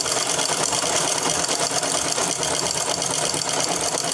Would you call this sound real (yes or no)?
yes